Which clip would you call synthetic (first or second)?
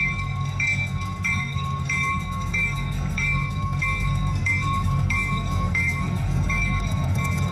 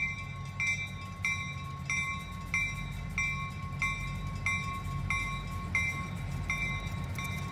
first